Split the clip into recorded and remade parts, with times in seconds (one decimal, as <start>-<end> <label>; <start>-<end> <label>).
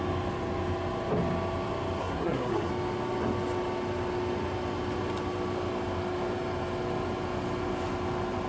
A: 0.0-2.0 recorded; 2.0-2.7 remade; 2.7-8.5 recorded